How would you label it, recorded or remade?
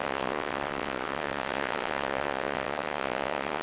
remade